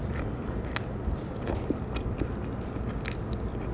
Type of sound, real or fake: real